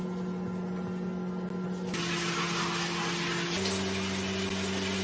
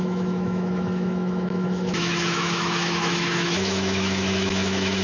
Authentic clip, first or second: first